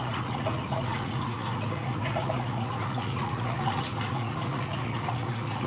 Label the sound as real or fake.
fake